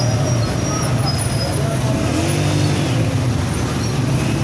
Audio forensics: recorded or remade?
recorded